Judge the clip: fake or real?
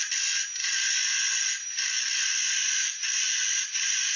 fake